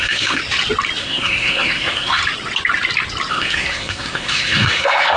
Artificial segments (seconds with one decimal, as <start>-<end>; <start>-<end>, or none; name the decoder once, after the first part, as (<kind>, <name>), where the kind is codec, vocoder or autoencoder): 0.0-0.4 (codec, SNAC); 1.0-2.2; 3.3-5.2